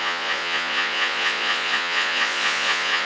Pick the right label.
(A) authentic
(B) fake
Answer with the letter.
B